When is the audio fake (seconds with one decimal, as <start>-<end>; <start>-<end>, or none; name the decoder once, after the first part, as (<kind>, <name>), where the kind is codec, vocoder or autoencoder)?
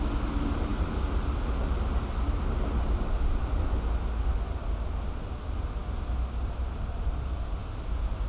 none